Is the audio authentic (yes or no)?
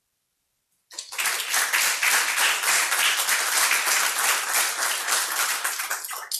yes